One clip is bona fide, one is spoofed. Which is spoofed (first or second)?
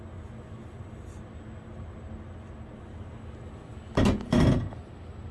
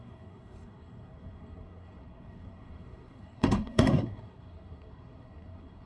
second